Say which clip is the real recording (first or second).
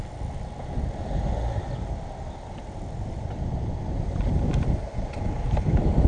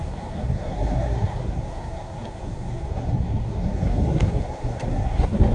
first